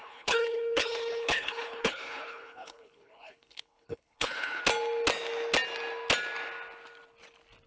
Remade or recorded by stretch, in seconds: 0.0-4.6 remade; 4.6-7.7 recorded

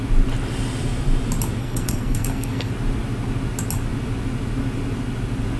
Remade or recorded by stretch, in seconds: 0.0-1.6 recorded; 1.6-2.7 remade; 2.7-5.6 recorded

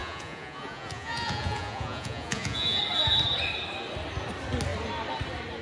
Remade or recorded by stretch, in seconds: 0.0-2.8 remade; 2.8-5.6 recorded

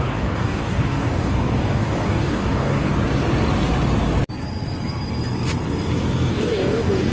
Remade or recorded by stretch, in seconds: 0.0-2.9 remade; 2.9-6.3 recorded; 6.3-7.1 remade

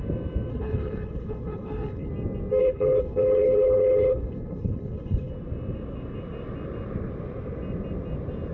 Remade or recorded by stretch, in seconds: 0.0-0.5 recorded; 0.5-2.1 remade; 2.1-2.6 recorded; 2.6-5.3 remade; 5.3-8.5 recorded

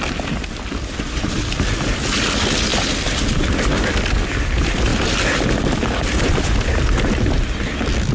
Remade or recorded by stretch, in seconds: 0.0-8.1 recorded